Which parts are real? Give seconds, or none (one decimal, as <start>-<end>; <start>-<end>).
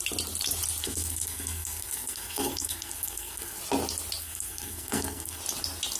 0.0-0.8; 3.6-4.2; 5.4-6.0